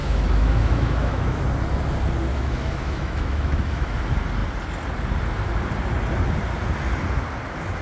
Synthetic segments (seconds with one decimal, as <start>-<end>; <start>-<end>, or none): 0.0-1.4; 2.3-4.0